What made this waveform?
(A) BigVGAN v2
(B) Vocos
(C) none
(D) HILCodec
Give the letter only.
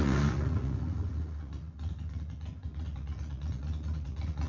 B